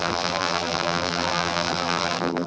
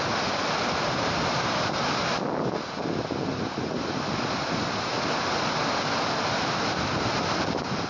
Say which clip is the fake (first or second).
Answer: first